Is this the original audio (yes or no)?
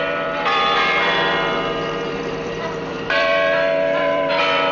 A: no